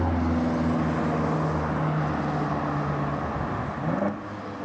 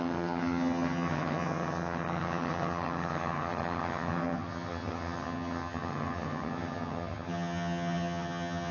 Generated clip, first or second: second